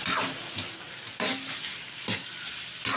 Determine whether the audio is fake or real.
real